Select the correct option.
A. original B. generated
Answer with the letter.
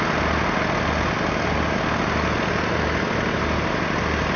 A